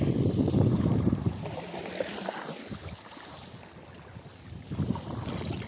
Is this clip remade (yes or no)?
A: no